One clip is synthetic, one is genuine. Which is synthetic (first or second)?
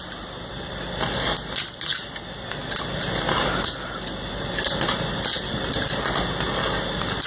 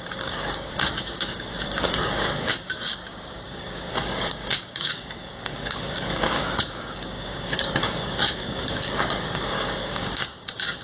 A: second